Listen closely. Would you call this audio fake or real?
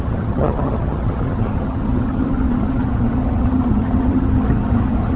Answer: fake